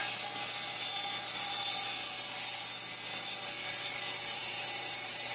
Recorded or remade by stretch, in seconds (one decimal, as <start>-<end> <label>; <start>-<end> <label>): 0.0-4.4 recorded; 4.4-5.3 remade

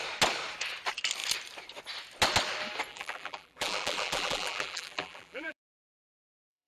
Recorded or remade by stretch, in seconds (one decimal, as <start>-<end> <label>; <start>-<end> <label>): 0.0-2.9 recorded; 2.9-6.7 remade

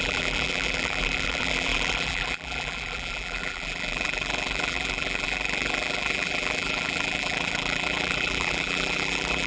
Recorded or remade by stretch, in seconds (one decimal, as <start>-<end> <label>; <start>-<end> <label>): 0.0-9.5 remade

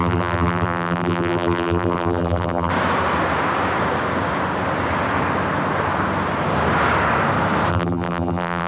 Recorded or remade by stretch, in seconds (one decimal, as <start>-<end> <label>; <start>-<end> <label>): 0.0-2.7 remade; 2.7-7.7 recorded; 7.7-8.7 remade

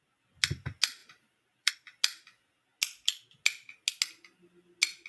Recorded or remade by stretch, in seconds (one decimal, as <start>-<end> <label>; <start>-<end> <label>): 0.0-1.0 recorded; 1.0-1.7 remade; 1.7-5.1 recorded

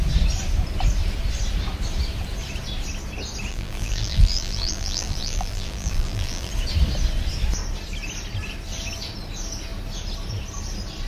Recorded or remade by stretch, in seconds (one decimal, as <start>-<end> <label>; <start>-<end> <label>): 0.0-3.5 recorded; 3.5-6.5 remade; 6.5-11.1 recorded

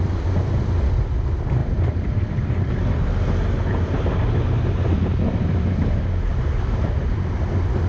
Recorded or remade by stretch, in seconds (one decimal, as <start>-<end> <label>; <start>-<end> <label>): 0.0-1.6 recorded; 1.6-2.7 remade; 2.7-6.3 recorded; 6.3-7.5 remade; 7.5-7.9 recorded

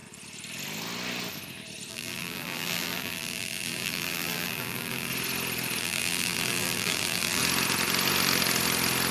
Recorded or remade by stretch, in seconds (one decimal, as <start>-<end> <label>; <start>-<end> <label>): 0.0-1.9 recorded; 1.9-5.1 remade; 5.1-5.8 recorded; 5.8-7.4 remade; 7.4-9.1 recorded